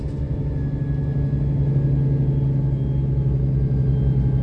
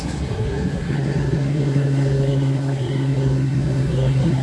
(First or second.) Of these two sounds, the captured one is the first